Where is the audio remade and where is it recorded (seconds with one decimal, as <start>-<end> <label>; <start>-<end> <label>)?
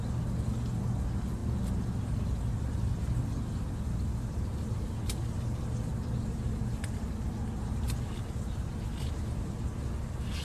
0.0-10.4 recorded